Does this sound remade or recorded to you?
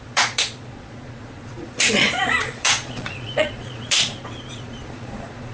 remade